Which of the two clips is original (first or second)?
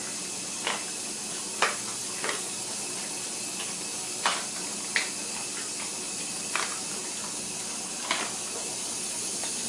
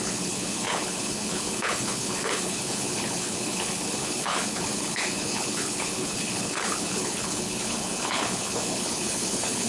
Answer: first